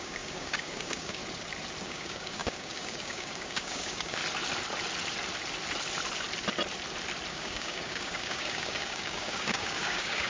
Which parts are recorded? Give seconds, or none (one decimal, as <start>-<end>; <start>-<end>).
1.2-1.8; 4.2-7.3